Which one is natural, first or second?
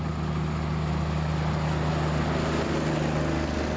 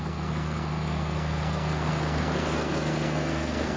first